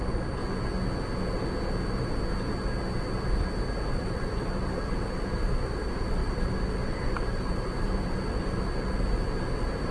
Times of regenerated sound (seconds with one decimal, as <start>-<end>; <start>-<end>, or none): 0.0-0.4; 3.9-9.9